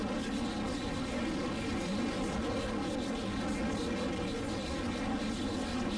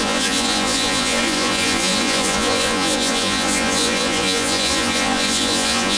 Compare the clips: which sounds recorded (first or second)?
first